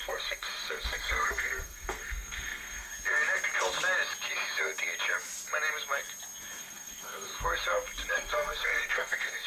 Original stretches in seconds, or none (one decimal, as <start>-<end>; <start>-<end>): 2.9-6.6; 7.3-8.1